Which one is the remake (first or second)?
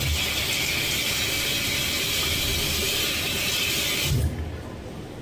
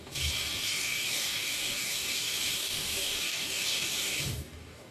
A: second